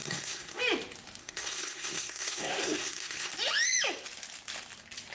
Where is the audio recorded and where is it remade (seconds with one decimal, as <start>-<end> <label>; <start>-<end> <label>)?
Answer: 0.0-0.6 remade; 0.6-1.2 recorded; 1.2-3.3 remade; 3.3-5.1 recorded